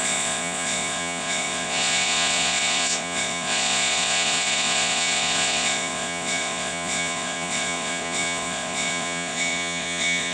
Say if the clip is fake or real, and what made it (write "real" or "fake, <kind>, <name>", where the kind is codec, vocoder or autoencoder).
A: fake, vocoder, Vocos